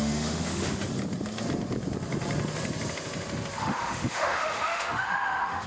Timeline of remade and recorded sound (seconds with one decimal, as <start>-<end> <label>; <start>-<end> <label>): 0.0-0.9 remade; 0.9-3.6 recorded; 3.6-5.7 remade